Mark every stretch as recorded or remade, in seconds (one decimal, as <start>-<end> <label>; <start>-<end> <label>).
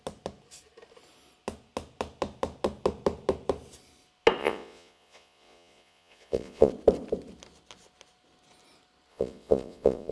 0.0-4.4 recorded; 4.4-6.7 remade; 6.7-9.1 recorded; 9.1-10.1 remade